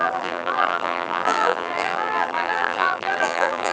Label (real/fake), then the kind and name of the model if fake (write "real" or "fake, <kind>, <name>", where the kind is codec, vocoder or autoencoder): fake, vocoder, BigVGAN v2